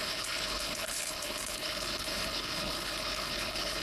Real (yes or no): no